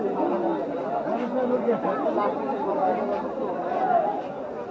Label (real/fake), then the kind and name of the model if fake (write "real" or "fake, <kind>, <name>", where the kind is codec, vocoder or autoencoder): real